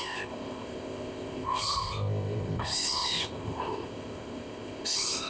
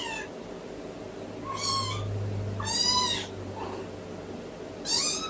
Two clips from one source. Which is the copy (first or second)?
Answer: first